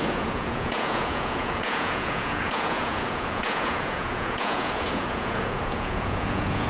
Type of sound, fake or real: fake